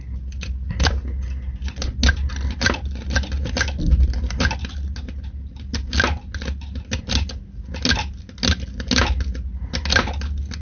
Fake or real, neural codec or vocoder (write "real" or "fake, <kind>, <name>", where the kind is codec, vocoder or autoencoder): real